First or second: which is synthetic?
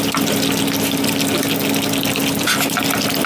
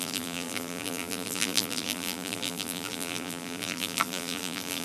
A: second